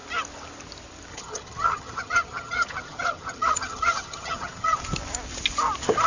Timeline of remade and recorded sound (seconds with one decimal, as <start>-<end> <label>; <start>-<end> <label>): 0.0-1.1 recorded; 1.1-4.8 remade; 4.8-6.1 recorded